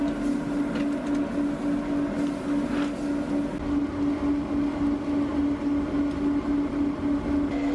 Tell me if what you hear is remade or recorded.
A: recorded